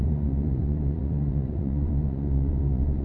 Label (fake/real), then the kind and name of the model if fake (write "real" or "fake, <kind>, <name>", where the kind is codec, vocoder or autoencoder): fake, vocoder, Vocos